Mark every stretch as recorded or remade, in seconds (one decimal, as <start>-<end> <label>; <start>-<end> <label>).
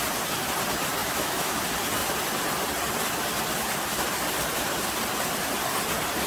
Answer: 0.0-1.0 recorded; 1.0-1.6 remade; 1.6-6.3 recorded